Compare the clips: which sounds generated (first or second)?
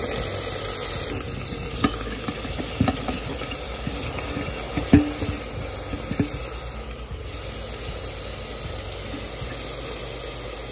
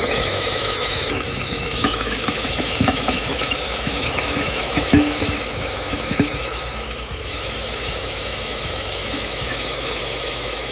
second